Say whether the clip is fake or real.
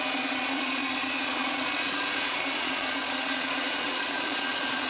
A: fake